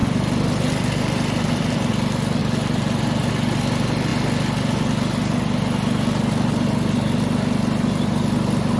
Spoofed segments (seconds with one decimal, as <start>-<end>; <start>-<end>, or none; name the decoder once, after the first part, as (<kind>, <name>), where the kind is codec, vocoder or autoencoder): 0.0-1.9 (vocoder, BigVGAN v2); 2.4-3.3